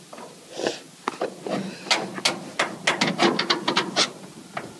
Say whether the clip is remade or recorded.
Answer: recorded